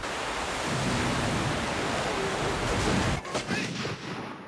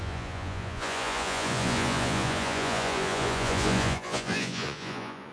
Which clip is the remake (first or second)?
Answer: second